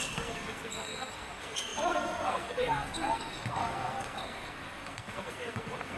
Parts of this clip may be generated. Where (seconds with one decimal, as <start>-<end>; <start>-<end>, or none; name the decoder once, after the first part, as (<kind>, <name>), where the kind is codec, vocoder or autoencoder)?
0.0-6.0 (codec, SNAC)